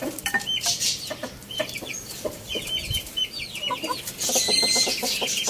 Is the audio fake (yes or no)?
no